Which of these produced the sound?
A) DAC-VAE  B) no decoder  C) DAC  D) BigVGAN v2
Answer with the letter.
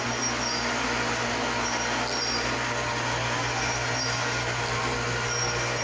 B